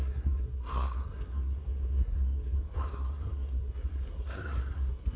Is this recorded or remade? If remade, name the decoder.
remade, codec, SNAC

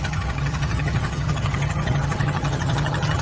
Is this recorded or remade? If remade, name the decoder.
remade, vocoder, HiFi-GAN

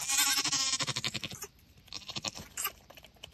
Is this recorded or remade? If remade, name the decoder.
remade, vocoder, BigVGAN v2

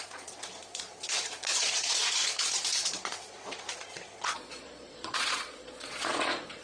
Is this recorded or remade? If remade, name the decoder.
remade, vocoder, Vocos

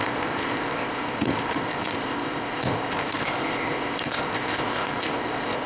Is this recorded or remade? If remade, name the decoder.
remade, codec, ZipCodec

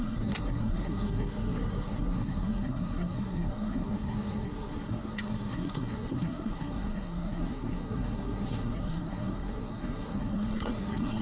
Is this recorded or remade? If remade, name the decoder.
remade, codec, SNAC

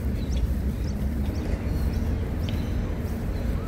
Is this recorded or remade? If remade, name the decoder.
recorded